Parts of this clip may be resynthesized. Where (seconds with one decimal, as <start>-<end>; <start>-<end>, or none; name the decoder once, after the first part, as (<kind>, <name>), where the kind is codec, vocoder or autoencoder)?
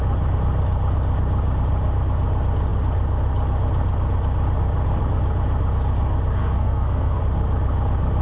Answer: 6.4-7.2 (codec, SNAC)